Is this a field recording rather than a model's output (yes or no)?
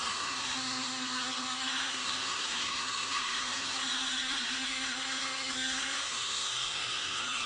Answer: no